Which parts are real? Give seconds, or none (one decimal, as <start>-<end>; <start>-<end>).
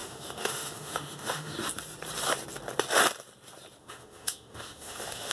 1.6-3.8